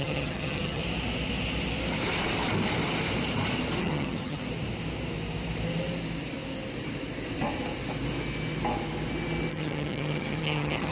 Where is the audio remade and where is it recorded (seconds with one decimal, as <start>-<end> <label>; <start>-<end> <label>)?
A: 0.0-0.8 remade; 0.8-3.8 recorded; 3.8-4.4 remade; 4.4-9.5 recorded; 9.5-10.9 remade